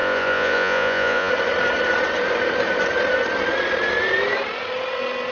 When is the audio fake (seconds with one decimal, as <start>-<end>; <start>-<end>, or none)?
0.0-1.3